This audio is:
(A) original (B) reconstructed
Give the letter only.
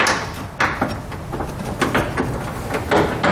A